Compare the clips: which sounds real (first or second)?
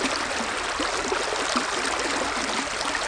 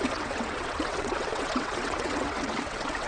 first